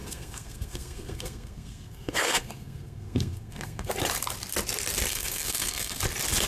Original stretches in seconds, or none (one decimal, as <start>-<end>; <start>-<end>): 3.9-5.1; 6.0-6.5

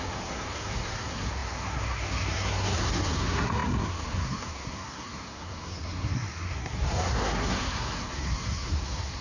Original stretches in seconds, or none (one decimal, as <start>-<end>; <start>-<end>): none